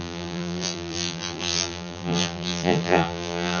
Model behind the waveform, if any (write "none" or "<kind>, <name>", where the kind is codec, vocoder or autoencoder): vocoder, BigVGAN v2